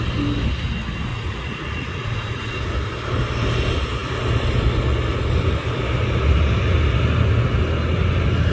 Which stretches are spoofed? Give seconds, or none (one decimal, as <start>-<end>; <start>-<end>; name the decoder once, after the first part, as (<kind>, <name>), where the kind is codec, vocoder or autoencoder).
1.1-2.7 (vocoder, Vocos)